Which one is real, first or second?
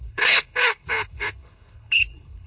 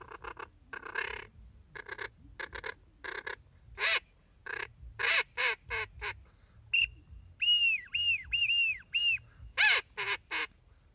second